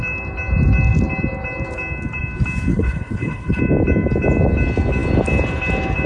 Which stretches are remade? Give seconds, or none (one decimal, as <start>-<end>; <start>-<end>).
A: 2.7-3.6